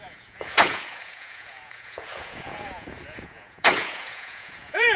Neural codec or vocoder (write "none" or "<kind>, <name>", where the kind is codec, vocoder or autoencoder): vocoder, Vocos